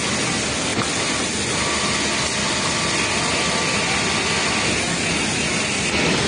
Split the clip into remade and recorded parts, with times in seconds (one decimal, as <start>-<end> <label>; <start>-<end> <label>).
0.0-6.3 recorded